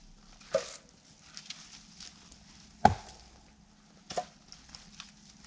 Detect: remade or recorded recorded